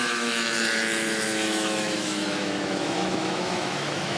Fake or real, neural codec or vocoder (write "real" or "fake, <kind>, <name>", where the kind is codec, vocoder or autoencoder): fake, autoencoder, DAC-VAE